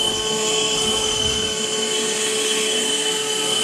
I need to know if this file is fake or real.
fake